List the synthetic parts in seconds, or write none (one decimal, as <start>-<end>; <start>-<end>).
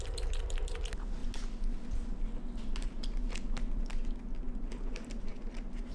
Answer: none